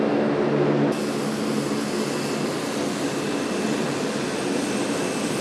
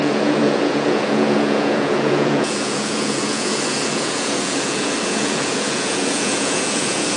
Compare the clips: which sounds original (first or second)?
first